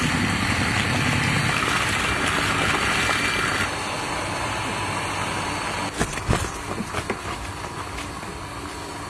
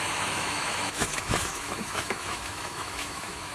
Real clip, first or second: first